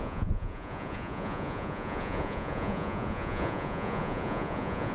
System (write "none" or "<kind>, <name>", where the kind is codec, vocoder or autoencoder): vocoder, Vocos